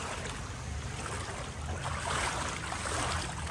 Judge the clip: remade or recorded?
recorded